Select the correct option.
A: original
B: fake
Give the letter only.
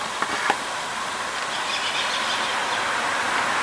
A